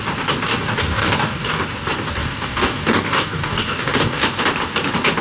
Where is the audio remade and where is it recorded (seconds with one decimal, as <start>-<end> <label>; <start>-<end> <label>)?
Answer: 0.0-0.5 recorded; 0.5-1.6 remade; 1.6-2.2 recorded; 2.2-4.4 remade; 4.4-5.2 recorded